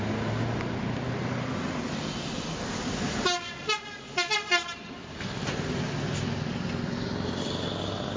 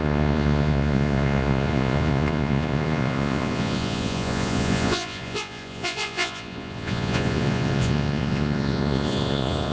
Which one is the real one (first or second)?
first